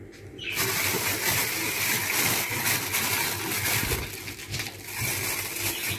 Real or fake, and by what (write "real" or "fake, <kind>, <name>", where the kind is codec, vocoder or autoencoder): real